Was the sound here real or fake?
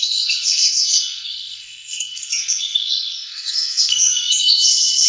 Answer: fake